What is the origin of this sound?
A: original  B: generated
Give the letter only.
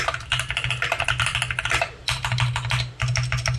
A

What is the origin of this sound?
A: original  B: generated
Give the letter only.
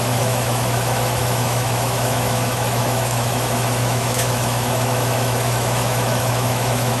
B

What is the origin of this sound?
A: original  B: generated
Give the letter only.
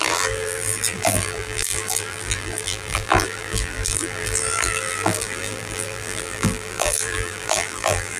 B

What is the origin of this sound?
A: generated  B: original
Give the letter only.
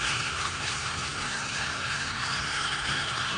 A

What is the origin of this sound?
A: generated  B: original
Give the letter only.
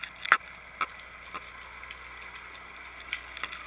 B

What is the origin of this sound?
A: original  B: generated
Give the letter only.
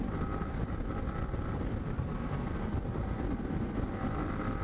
A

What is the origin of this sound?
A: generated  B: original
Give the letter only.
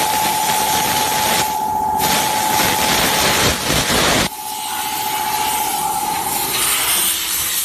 B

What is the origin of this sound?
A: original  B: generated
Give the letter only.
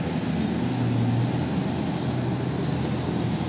A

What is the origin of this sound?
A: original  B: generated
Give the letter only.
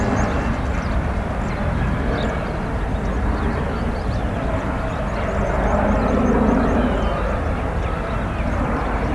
A